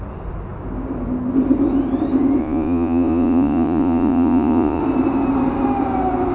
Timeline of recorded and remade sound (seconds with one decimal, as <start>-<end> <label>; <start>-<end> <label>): 0.0-2.4 recorded; 2.4-4.8 remade; 4.8-6.3 recorded